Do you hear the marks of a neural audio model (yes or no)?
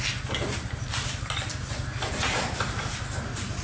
no